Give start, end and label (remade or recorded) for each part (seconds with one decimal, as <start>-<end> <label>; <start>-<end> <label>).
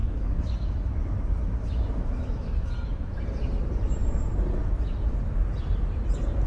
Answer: 0.0-3.2 remade; 3.2-6.5 recorded